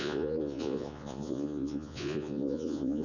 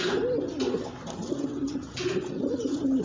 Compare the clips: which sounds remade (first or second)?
first